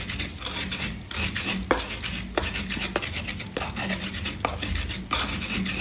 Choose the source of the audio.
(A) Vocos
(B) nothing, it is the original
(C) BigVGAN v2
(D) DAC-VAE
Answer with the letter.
B